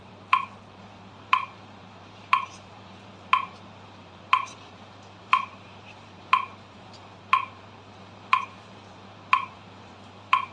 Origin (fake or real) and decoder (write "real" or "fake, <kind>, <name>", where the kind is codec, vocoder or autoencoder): fake, vocoder, BigVGAN v2